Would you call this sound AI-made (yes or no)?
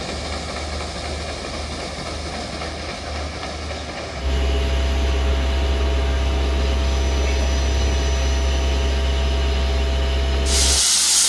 no